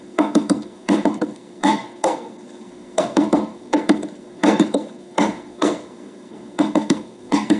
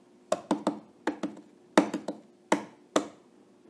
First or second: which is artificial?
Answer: first